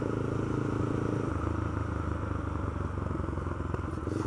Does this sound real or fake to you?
real